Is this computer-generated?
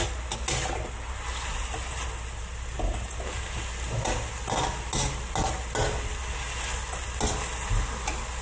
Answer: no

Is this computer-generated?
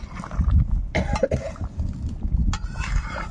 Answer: no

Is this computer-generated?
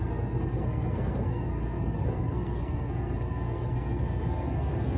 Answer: yes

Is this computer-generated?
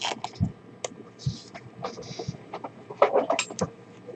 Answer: no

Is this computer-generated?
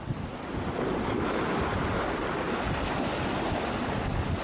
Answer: no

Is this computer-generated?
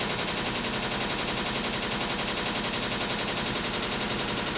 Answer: no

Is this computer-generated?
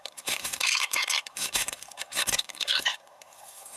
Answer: yes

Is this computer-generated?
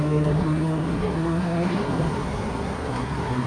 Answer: yes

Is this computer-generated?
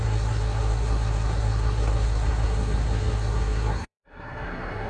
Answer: yes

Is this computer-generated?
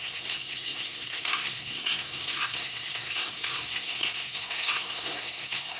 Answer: yes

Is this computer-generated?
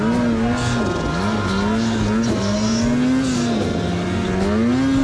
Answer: no